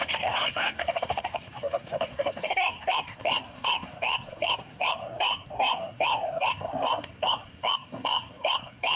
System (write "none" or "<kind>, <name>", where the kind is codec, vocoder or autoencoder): codec, SNAC